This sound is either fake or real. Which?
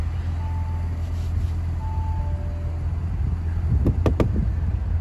real